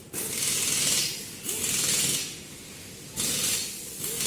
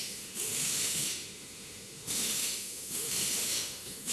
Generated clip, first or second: second